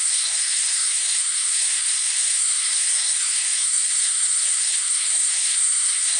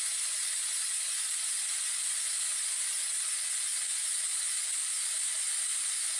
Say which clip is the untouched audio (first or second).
second